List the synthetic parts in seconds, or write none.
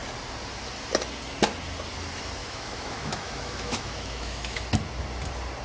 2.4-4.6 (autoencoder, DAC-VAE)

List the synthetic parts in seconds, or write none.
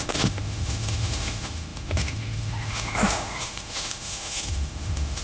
0.0-5.2 (autoencoder, DAC-VAE)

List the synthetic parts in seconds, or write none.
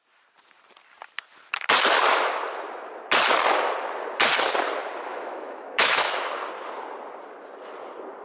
5.1-6.3 (autoencoder, DAC-VAE)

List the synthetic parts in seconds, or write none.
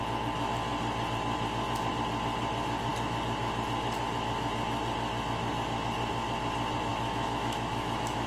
6.9-8.3 (autoencoder, DAC-VAE)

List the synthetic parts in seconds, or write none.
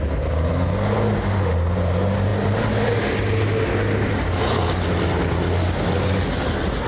none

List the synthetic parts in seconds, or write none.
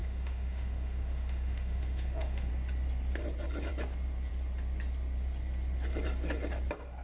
0.0-2.5 (autoencoder, DAC-VAE)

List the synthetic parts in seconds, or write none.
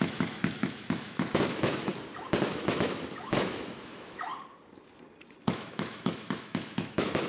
0.0-1.9 (autoencoder, DAC-VAE); 2.5-4.3; 5.5-7.3